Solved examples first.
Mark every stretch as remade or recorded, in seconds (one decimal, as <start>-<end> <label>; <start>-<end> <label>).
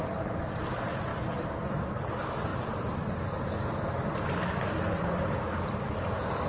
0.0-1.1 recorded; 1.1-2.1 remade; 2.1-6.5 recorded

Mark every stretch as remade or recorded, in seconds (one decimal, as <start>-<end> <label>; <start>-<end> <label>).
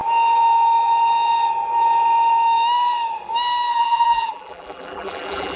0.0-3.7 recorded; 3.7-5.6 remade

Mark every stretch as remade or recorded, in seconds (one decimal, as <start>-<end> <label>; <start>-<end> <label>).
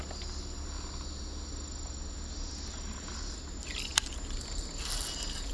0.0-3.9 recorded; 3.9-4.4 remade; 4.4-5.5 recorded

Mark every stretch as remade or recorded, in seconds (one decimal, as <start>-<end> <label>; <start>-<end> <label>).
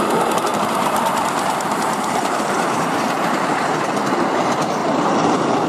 0.0-0.5 recorded; 0.5-3.9 remade; 3.9-4.8 recorded; 4.8-5.7 remade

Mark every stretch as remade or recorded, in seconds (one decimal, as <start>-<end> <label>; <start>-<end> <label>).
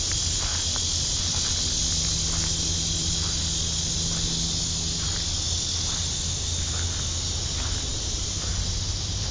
0.0-0.5 recorded; 0.5-1.6 remade; 1.6-7.9 recorded; 7.9-8.5 remade; 8.5-9.3 recorded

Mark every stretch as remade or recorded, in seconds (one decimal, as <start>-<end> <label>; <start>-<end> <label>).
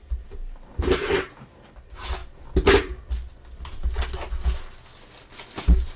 0.0-1.7 remade; 1.7-6.0 recorded